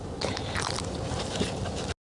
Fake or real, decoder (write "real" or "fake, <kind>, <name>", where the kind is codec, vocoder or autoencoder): real